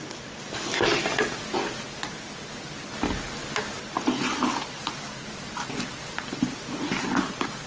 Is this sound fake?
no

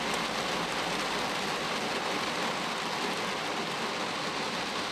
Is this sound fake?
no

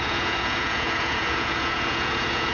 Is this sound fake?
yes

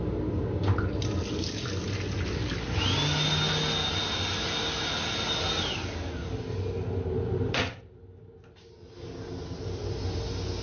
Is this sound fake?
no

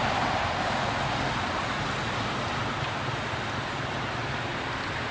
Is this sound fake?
no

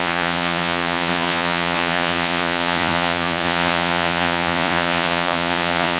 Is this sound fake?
yes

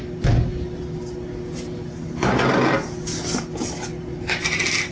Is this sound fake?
no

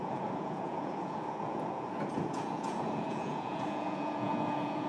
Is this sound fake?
yes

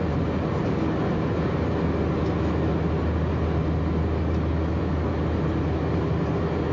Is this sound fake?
no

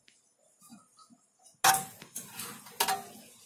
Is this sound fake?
no